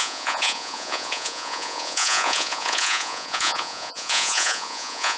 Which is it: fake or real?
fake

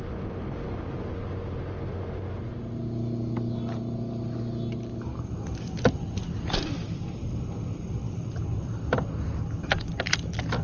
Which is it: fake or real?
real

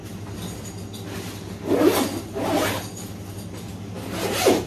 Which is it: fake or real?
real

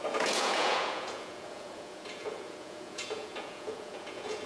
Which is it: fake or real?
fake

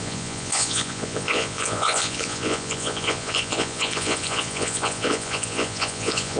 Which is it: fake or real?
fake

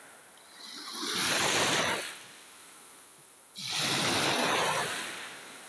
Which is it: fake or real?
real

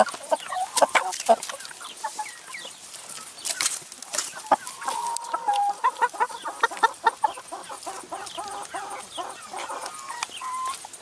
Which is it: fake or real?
real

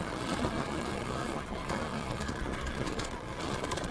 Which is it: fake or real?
fake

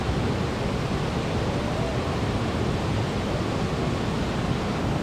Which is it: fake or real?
real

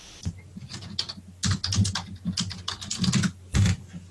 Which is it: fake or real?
real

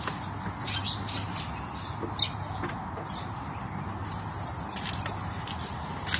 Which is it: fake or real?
real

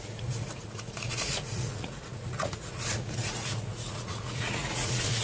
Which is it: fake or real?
fake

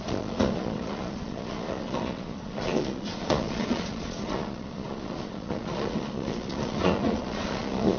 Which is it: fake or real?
fake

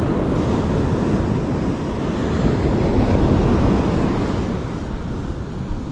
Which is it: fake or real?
real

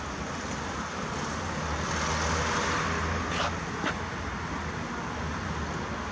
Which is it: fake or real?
real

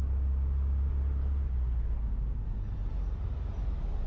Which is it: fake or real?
real